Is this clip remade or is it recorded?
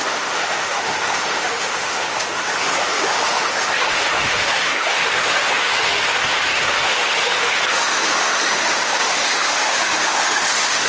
remade